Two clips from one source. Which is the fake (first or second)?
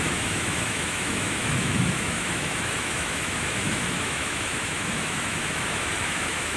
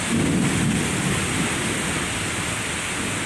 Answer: first